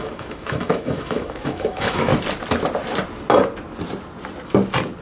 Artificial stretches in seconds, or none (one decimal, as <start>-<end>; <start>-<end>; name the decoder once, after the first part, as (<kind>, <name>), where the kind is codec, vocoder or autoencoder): 0.0-2.1 (autoencoder, DAC-VAE)